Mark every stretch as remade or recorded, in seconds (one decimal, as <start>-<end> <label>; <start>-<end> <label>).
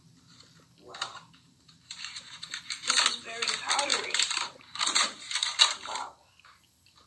0.0-1.1 recorded; 1.1-2.5 remade; 2.5-3.9 recorded; 3.9-5.6 remade; 5.6-7.1 recorded